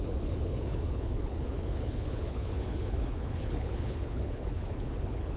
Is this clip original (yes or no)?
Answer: no